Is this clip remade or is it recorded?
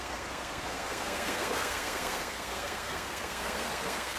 remade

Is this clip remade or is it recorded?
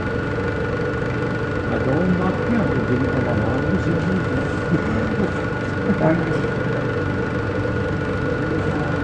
recorded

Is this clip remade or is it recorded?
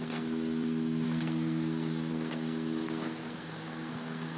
remade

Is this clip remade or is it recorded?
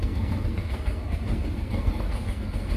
remade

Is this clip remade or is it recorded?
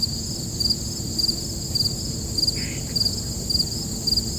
recorded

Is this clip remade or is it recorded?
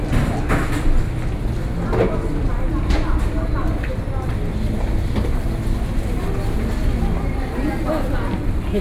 recorded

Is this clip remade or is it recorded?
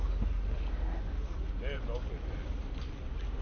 recorded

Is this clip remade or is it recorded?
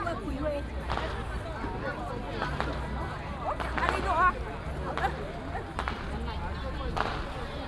recorded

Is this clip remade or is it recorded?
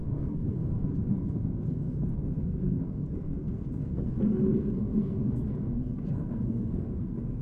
remade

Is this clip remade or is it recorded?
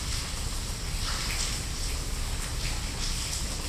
recorded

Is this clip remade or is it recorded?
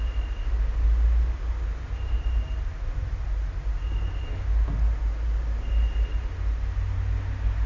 recorded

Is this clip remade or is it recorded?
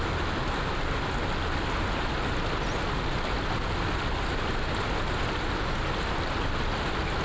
recorded